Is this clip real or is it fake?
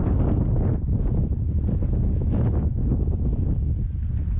real